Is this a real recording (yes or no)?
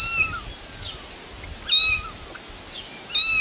yes